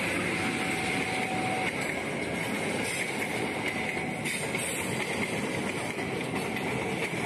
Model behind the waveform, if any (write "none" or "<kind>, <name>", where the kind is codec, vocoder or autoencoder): none